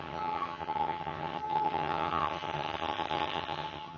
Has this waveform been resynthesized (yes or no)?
yes